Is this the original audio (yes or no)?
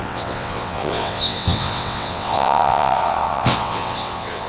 no